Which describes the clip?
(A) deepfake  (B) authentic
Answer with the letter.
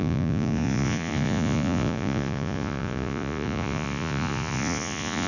A